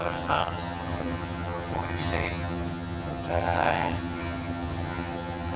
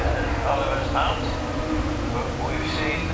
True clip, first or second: second